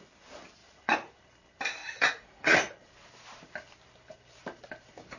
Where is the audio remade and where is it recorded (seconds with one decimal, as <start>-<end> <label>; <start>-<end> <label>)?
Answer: 0.0-0.6 recorded; 0.6-1.2 remade; 1.2-1.8 recorded; 1.8-2.7 remade; 2.7-5.2 recorded